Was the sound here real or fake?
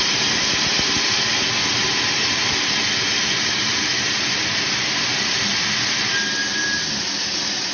real